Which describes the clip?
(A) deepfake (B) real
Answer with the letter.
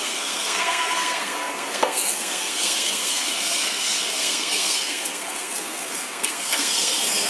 A